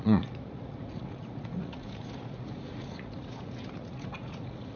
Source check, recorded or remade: remade